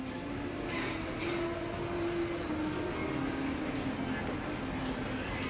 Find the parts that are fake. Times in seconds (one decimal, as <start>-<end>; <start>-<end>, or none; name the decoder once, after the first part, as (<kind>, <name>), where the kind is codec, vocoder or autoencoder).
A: none